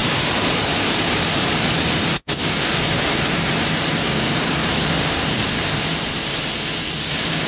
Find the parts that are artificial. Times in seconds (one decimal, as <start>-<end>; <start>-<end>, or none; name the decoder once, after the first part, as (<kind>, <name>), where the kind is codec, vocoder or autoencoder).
0.0-2.1 (vocoder, BigVGAN v2); 4.6-6.4